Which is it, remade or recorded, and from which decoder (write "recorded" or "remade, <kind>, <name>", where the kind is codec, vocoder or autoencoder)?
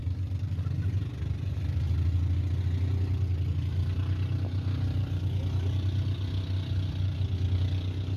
recorded